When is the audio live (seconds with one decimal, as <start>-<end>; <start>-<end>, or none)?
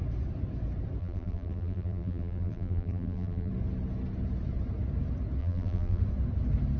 0.0-1.0; 3.5-5.4; 6.0-6.8